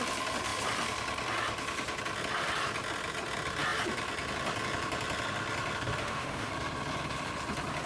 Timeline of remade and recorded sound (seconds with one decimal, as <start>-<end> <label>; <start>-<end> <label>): 0.0-6.0 recorded; 6.0-6.5 remade; 6.5-7.9 recorded